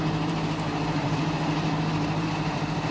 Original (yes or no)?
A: no